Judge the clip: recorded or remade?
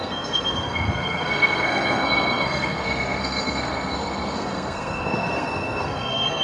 remade